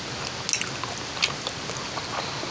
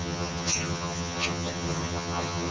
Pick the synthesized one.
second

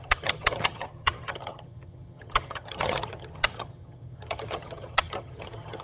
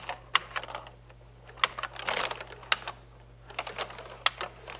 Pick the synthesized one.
first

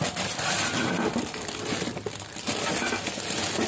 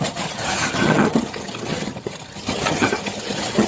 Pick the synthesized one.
second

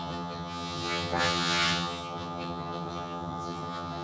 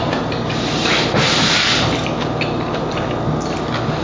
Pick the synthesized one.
first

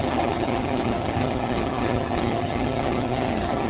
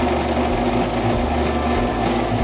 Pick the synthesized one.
first